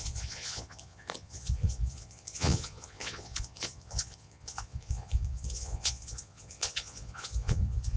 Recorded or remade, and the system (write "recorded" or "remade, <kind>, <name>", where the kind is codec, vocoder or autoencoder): remade, vocoder, Vocos